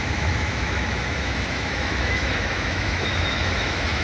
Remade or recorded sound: remade